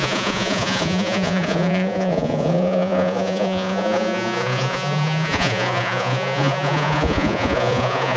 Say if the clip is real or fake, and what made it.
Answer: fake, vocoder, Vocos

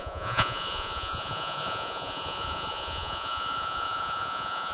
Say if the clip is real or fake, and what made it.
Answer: fake, vocoder, Vocos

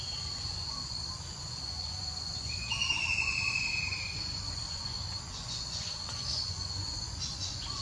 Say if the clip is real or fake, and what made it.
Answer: fake, vocoder, Vocos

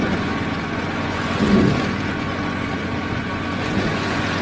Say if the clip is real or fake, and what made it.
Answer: fake, vocoder, Vocos